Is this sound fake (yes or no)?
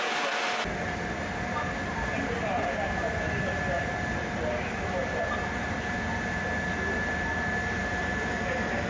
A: no